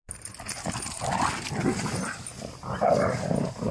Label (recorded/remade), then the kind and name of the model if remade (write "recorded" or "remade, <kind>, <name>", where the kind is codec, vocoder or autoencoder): recorded